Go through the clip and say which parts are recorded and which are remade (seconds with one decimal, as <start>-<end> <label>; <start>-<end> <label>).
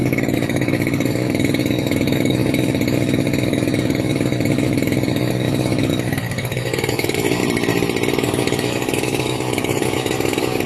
0.0-7.4 remade; 7.4-8.1 recorded; 8.1-10.7 remade